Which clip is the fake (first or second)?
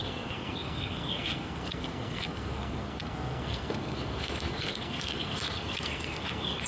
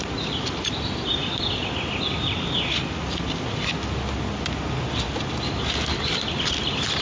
first